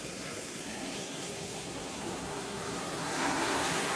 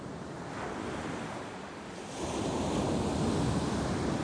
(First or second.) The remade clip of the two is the first